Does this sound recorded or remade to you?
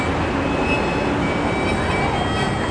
recorded